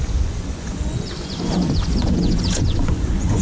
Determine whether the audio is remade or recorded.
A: remade